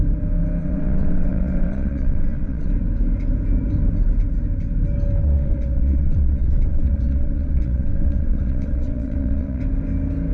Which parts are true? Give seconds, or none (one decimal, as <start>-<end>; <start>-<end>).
0.0-0.6; 2.7-5.2; 9.6-10.3